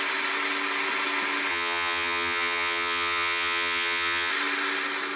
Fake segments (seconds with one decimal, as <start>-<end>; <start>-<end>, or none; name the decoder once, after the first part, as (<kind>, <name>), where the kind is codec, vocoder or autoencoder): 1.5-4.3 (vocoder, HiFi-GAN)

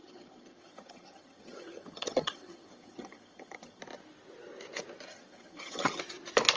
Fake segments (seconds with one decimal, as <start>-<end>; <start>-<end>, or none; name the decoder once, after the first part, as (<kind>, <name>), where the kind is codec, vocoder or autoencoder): 0.0-3.8 (vocoder, HiFi-GAN); 5.1-6.0

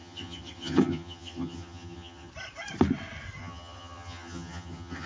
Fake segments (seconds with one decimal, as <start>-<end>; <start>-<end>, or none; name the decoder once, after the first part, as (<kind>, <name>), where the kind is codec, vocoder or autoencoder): 0.0-2.3 (vocoder, HiFi-GAN); 3.4-5.1

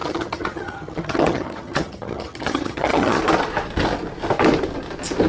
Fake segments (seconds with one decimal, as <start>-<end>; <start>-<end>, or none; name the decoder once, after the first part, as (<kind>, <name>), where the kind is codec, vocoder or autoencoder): 0.0-3.2 (vocoder, HiFi-GAN)